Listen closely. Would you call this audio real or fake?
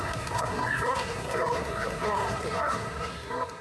fake